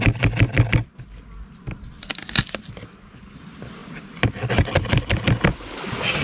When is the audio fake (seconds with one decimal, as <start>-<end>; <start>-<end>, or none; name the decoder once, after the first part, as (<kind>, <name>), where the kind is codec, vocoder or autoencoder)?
3.8-4.5 (vocoder, BigVGAN v2)